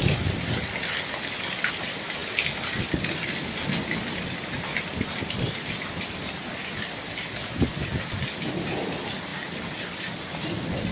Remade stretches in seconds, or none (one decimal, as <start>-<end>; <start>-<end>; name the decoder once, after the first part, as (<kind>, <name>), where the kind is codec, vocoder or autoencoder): none